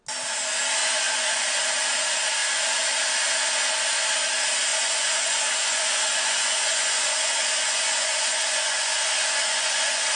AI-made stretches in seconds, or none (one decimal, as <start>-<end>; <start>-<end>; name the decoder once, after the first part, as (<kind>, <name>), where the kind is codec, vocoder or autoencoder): 0.8-1.6 (vocoder, Vocos); 4.7-10.2